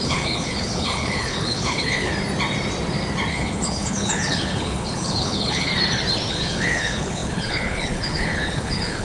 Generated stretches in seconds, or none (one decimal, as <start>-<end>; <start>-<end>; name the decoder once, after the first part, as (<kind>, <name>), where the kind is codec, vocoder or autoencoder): 0.0-2.1 (codec, HILCodec); 3.3-5.7; 6.3-9.0

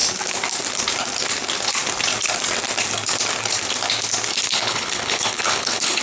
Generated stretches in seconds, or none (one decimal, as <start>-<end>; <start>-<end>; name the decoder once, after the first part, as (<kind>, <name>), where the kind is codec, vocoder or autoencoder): 4.3-6.0 (codec, HILCodec)